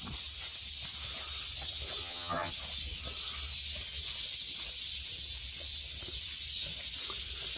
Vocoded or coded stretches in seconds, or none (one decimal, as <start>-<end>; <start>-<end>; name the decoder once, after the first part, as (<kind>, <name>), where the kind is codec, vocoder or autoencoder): 2.0-2.5 (vocoder, HiFi-GAN)